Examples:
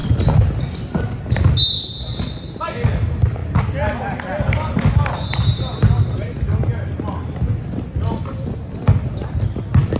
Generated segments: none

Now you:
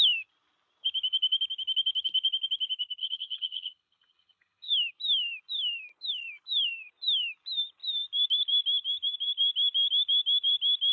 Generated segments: 3.0-4.7 (vocoder, HiFi-GAN)

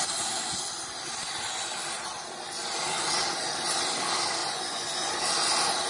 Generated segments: 4.4-5.1 (vocoder, Vocos)

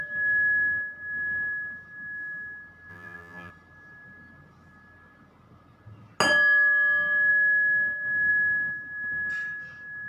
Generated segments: 2.9-3.5 (vocoder, BigVGAN v2)

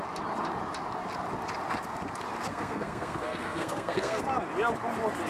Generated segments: 2.5-4.2 (codec, SNAC)

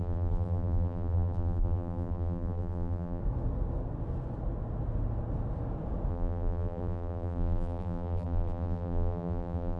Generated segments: 0.0-3.2 (vocoder, BigVGAN v2); 6.1-9.8

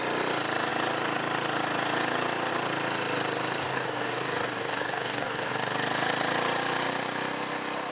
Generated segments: 3.6-5.5 (codec, DAC)